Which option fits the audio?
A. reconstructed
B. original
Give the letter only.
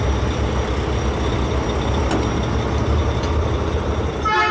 B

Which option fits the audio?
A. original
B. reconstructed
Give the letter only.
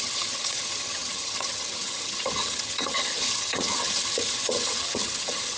B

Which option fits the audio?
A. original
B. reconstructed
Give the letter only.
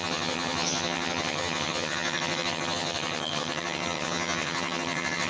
B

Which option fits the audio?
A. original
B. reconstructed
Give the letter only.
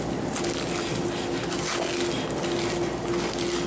A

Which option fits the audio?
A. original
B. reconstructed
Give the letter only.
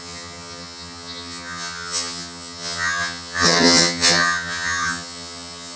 B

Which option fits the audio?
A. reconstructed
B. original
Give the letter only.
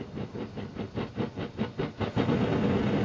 B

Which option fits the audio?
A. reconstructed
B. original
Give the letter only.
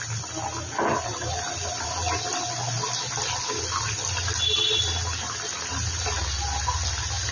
B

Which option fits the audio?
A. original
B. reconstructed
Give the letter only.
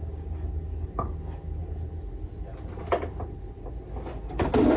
A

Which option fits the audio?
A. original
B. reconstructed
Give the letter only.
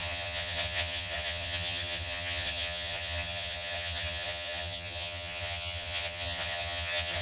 B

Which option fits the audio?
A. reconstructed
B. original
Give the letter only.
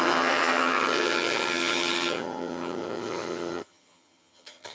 A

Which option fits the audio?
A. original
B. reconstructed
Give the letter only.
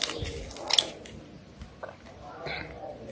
A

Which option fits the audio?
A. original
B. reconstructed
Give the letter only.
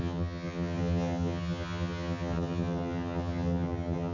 B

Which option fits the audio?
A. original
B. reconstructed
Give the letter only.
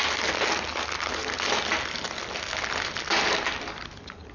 A